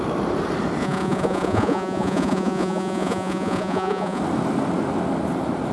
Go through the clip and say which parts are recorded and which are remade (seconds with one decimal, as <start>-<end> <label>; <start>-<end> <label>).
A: 0.0-0.8 recorded; 0.8-4.2 remade; 4.2-5.7 recorded